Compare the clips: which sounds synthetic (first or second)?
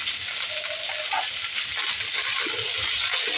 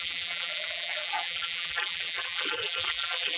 second